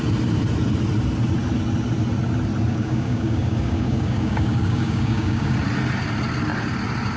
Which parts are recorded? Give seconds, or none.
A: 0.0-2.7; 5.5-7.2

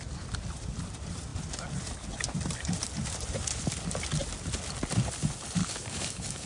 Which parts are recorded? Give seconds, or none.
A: 0.0-5.6